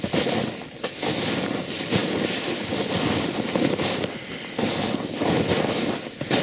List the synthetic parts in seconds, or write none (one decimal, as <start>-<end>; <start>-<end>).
none